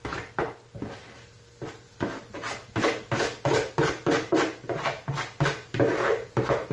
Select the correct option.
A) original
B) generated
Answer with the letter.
A